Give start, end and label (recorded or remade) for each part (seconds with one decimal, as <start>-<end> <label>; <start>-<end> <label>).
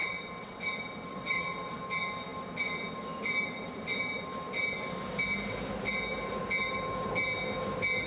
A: 0.0-0.6 remade; 0.6-1.1 recorded; 1.1-1.8 remade; 1.8-8.1 recorded